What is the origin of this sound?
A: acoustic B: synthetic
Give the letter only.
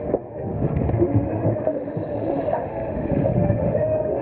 B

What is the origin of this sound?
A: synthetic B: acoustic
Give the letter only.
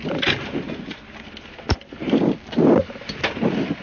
B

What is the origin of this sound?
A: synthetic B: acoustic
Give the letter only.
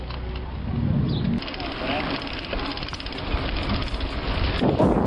B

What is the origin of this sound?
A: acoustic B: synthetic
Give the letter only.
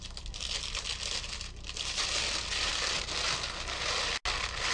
A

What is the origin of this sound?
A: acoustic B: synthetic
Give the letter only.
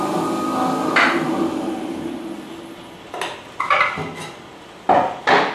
A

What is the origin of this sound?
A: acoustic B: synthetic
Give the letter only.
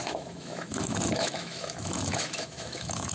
B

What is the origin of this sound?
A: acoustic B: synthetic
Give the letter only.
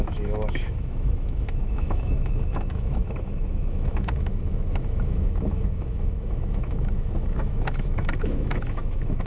B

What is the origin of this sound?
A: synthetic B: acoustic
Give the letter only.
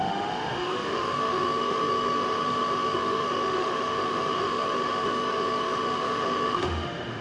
A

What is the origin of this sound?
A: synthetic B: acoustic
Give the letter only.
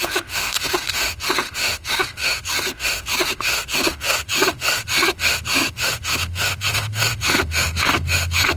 A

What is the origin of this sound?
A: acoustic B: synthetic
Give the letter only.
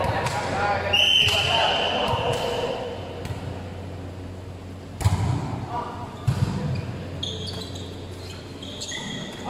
A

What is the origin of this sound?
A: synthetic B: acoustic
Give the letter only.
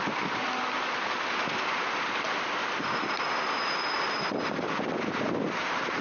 B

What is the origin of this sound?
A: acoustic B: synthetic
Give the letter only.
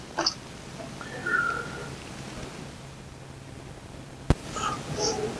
A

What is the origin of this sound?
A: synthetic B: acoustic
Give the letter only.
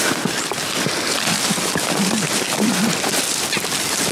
B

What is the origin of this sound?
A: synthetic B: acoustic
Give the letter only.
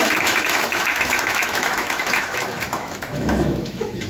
A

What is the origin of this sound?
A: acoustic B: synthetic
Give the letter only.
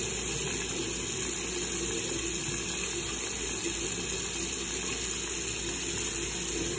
A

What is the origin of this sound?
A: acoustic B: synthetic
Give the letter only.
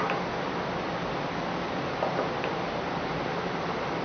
A